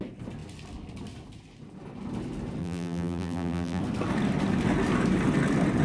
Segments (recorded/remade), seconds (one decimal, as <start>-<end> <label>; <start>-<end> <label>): 0.0-2.6 recorded; 2.6-3.8 remade; 3.8-5.8 recorded